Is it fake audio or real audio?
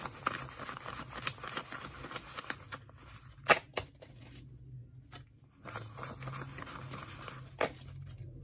real